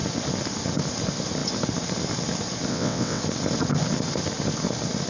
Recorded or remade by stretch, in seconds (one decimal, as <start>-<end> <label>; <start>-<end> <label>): 0.0-2.7 recorded; 2.7-3.2 remade; 3.2-5.1 recorded